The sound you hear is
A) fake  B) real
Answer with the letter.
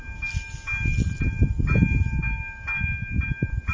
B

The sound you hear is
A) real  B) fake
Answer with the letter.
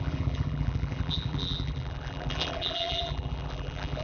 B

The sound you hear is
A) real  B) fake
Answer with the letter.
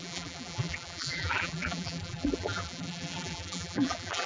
B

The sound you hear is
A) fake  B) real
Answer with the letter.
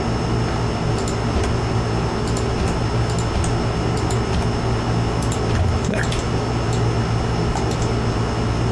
B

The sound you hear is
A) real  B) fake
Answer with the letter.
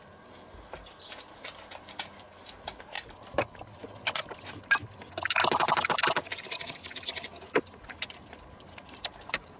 A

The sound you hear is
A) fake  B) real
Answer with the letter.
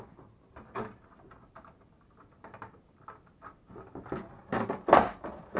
B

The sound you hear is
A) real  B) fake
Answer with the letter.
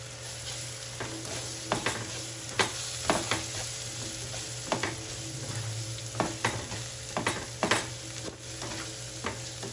A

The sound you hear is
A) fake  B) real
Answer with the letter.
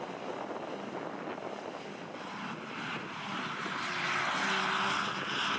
B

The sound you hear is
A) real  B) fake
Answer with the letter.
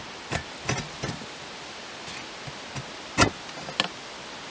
A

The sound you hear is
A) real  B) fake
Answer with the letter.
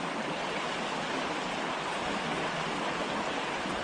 A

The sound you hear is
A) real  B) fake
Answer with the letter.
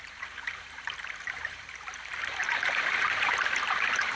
B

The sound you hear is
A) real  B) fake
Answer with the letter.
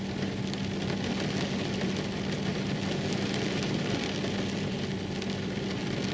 A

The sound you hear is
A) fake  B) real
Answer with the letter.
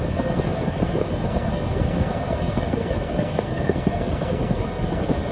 A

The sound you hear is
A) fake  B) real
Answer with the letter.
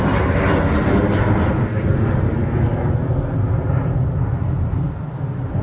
B